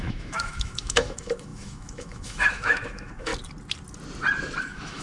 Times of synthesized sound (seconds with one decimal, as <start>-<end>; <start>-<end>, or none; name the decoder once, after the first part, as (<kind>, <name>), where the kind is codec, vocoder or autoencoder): 0.0-3.3 (autoencoder, DAC-VAE); 4.6-5.0